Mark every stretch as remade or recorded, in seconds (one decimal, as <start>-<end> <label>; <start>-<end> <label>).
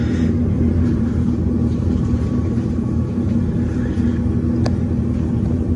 0.0-4.1 remade; 4.1-5.3 recorded; 5.3-5.8 remade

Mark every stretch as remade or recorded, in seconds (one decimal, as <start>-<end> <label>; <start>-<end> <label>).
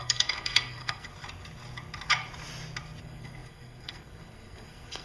0.0-1.1 remade; 1.1-3.0 recorded; 3.0-5.0 remade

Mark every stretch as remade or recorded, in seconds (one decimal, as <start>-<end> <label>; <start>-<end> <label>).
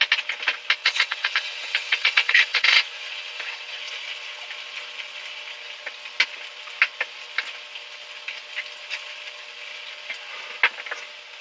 0.0-0.8 recorded; 0.8-3.8 remade; 3.8-11.4 recorded